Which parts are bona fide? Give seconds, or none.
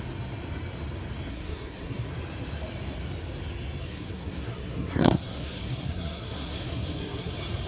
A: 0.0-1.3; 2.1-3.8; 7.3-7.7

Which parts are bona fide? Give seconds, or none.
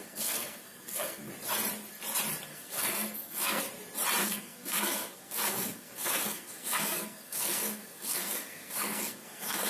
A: 1.3-2.5; 3.6-4.2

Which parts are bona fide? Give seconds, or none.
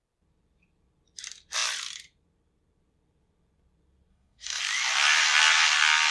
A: 0.0-4.1; 4.6-6.1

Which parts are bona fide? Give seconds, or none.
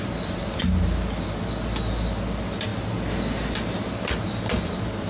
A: 0.0-5.1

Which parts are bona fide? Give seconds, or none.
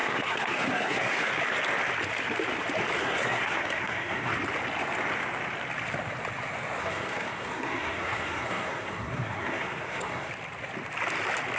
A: 1.3-3.0; 4.3-6.8; 10.3-11.6